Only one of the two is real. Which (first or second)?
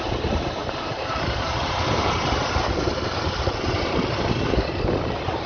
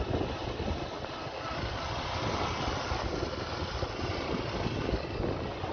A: second